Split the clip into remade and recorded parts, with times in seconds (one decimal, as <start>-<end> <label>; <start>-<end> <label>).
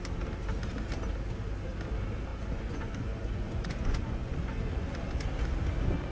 0.0-2.3 recorded; 2.3-5.3 remade; 5.3-6.1 recorded